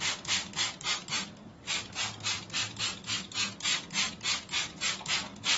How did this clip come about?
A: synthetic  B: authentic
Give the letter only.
B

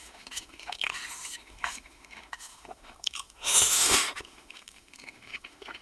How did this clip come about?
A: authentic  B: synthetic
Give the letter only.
B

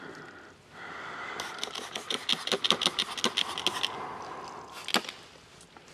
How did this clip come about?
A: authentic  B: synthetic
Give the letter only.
A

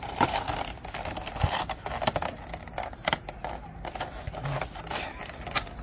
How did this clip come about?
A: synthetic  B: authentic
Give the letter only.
B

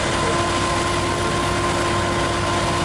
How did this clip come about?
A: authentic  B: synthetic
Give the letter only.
A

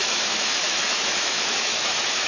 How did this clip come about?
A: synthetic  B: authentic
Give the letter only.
A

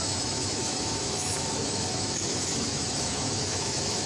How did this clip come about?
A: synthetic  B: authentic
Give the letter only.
A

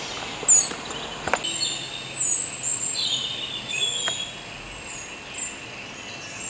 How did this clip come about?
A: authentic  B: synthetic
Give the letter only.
A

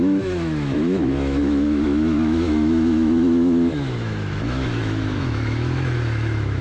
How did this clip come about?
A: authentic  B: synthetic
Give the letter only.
B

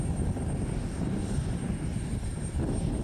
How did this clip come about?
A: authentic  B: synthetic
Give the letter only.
A